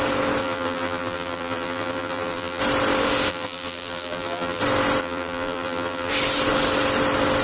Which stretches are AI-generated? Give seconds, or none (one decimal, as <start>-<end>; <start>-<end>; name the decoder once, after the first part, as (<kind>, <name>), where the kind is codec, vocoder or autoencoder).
0.4-2.6 (vocoder, BigVGAN v2); 3.3-4.6; 5.0-6.1